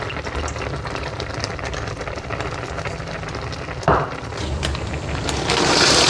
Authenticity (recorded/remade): recorded